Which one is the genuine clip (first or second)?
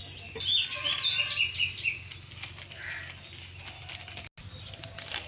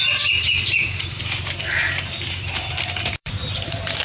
first